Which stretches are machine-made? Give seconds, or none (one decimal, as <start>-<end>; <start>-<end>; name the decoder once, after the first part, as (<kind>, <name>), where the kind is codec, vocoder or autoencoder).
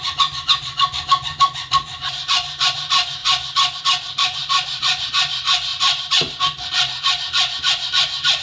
4.4-5.1 (vocoder, BigVGAN v2); 5.7-6.4